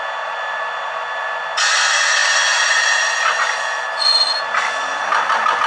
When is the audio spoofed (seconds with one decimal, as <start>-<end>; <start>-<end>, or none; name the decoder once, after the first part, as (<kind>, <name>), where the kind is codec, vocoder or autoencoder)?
none